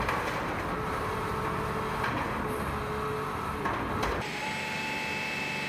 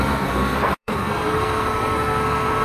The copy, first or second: second